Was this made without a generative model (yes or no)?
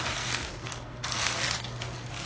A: no